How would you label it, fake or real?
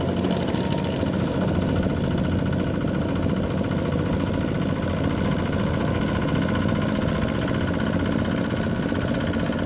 real